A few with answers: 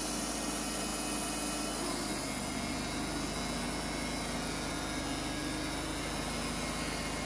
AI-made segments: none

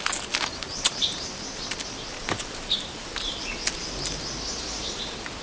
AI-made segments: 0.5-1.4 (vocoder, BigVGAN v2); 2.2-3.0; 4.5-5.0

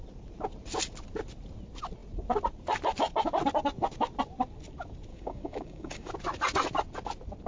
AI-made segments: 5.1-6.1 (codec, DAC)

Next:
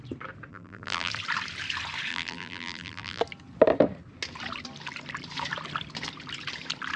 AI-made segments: 0.5-1.1 (vocoder, BigVGAN v2); 2.1-3.2